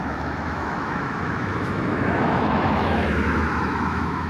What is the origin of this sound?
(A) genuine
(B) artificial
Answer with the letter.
B